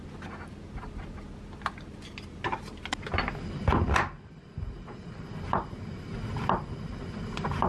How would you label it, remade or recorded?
recorded